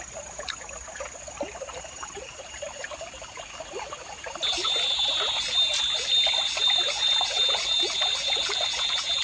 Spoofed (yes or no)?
no